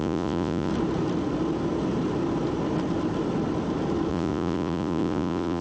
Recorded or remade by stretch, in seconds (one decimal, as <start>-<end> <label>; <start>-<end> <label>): 0.0-0.7 remade; 0.7-4.1 recorded; 4.1-5.6 remade